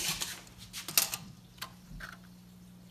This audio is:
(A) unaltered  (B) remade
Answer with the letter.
A